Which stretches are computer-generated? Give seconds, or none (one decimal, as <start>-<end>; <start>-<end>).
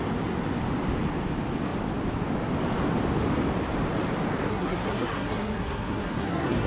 4.5-6.7